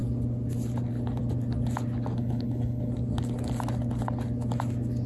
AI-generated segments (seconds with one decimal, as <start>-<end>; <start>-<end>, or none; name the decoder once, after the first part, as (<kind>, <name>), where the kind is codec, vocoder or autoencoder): 2.2-2.9 (codec, HILCodec)